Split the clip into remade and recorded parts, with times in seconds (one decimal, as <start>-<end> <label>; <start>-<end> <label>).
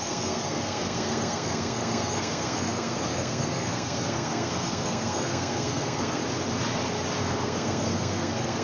0.0-6.2 remade; 6.2-7.2 recorded; 7.2-8.6 remade